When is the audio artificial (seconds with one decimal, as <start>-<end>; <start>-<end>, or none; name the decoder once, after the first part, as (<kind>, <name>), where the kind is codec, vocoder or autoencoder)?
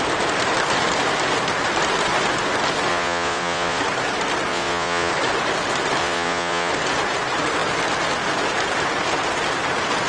2.9-3.8 (vocoder, Vocos); 4.5-5.1; 6.0-6.7